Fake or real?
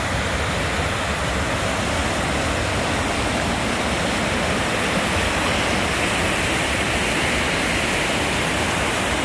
real